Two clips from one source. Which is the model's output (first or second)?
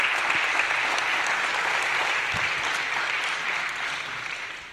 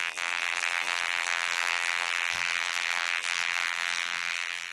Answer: second